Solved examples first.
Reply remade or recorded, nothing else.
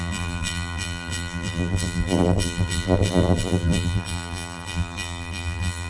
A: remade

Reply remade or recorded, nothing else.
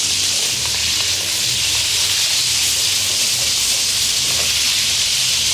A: recorded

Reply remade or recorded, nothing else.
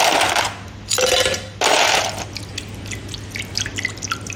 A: recorded